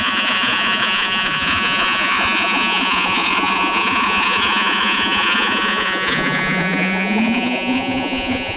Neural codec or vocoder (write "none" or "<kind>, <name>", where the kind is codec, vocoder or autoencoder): vocoder, Vocos